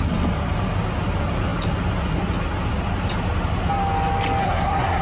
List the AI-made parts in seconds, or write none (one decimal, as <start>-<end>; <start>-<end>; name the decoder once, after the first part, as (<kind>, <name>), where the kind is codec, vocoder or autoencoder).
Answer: 4.4-5.0 (codec, SNAC)